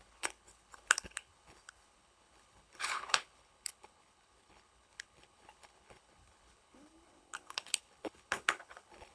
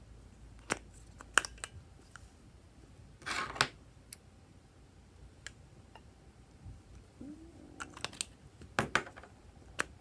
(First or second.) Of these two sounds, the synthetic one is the first